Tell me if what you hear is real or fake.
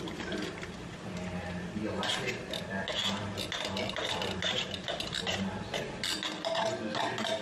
real